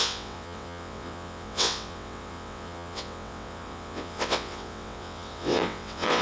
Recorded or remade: remade